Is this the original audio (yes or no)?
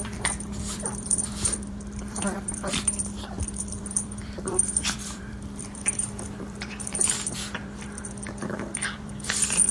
no